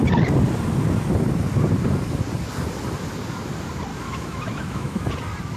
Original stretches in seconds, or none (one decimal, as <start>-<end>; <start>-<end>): 0.0-3.9; 5.1-5.6